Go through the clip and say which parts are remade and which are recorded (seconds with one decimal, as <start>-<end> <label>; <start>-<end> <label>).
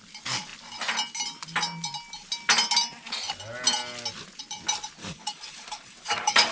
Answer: 0.0-5.0 recorded; 5.0-6.5 remade